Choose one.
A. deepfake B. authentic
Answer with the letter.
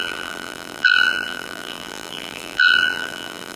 A